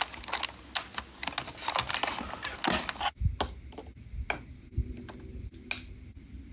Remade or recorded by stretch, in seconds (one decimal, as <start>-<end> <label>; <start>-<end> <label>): 0.0-6.5 recorded